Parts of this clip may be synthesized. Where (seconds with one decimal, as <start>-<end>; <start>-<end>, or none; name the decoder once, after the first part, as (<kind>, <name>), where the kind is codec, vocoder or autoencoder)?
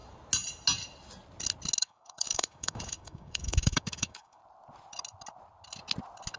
1.8-4.4 (codec, DAC)